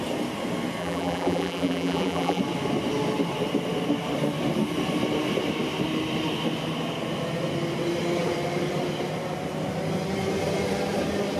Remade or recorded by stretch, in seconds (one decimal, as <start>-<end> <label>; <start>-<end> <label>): 0.0-0.8 recorded; 0.8-2.4 remade; 2.4-11.4 recorded